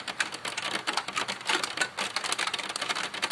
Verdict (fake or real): real